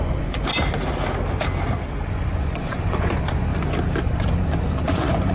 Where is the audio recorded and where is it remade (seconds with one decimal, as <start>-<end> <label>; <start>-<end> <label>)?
0.0-0.5 remade; 0.5-2.1 recorded; 2.1-3.5 remade; 3.5-4.0 recorded; 4.0-5.3 remade